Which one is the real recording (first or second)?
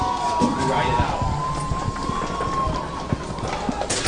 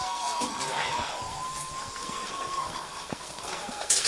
first